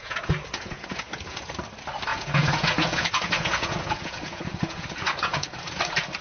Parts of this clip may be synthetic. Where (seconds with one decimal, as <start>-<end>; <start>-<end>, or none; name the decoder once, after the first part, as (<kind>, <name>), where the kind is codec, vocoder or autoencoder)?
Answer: 0.0-1.5 (vocoder, Vocos); 2.1-5.8